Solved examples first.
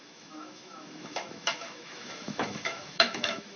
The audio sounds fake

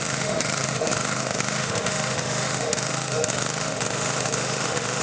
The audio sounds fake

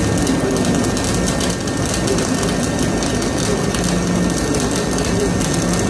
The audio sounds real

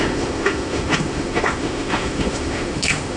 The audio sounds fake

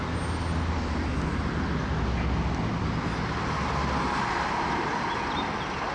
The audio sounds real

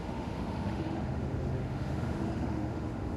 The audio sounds fake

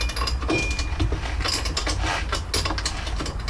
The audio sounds real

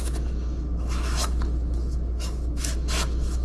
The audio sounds fake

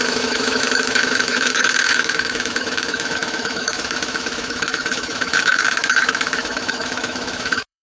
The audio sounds fake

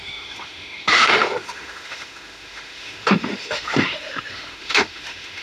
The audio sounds fake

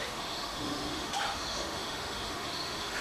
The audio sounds fake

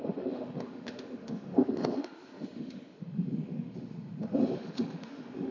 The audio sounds fake